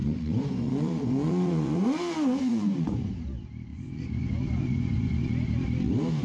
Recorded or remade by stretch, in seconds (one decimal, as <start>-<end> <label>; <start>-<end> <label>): 0.0-3.1 remade; 3.1-3.7 recorded; 3.7-5.3 remade; 5.3-6.2 recorded